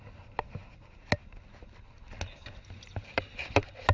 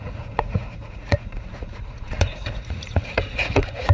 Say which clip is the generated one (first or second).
second